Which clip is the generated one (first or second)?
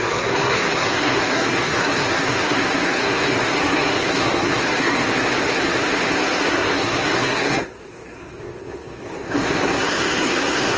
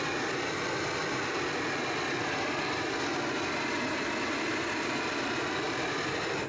first